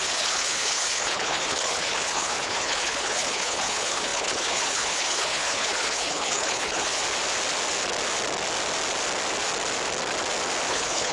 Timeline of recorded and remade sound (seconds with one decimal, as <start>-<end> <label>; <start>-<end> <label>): 0.0-7.0 remade; 7.0-10.7 recorded; 10.7-11.1 remade